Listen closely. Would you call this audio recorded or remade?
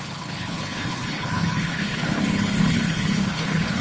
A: remade